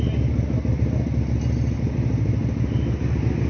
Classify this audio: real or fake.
real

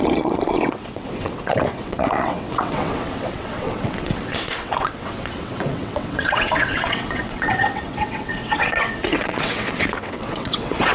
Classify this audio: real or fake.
fake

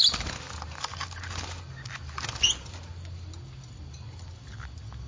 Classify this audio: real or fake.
real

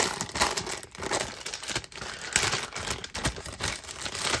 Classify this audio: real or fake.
real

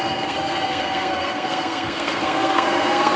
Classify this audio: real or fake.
fake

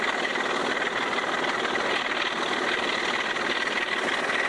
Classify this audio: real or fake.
real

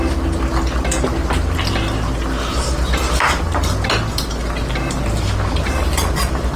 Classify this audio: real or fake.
real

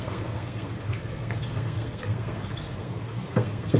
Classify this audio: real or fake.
fake